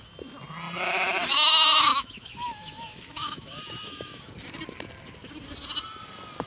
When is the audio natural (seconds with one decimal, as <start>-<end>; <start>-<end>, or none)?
0.0-1.9; 4.2-6.5